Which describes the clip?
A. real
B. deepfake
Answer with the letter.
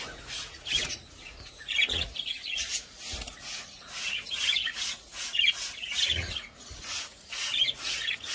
B